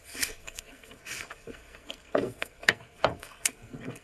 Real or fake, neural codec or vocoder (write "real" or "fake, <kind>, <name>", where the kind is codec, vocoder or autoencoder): fake, codec, SNAC